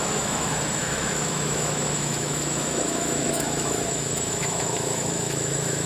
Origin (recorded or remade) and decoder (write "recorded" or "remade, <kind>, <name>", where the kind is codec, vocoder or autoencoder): remade, autoencoder, DAC-VAE